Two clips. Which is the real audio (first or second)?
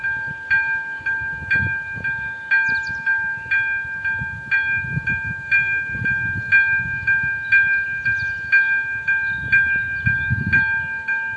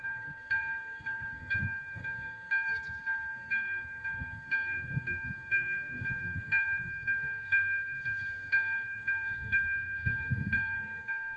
first